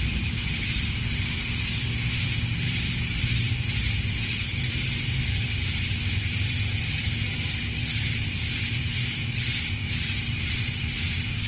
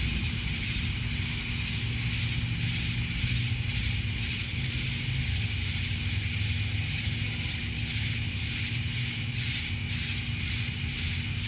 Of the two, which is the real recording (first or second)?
second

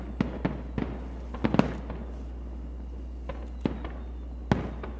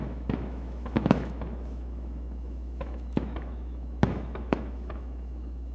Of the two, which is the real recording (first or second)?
first